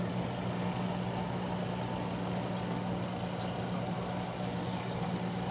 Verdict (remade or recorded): recorded